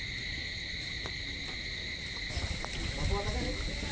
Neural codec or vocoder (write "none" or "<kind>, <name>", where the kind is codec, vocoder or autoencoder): none